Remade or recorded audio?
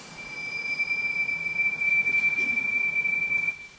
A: remade